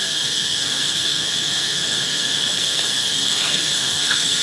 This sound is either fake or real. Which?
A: fake